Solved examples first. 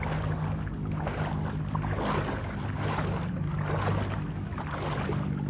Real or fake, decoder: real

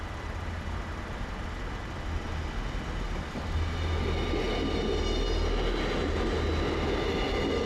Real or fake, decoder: real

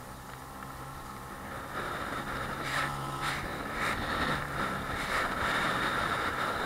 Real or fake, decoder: fake, vocoder, BigVGAN v2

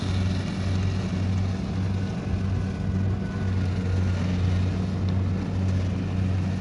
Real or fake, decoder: real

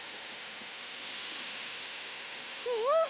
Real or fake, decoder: fake, autoencoder, DAC-VAE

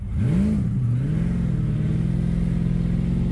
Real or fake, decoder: real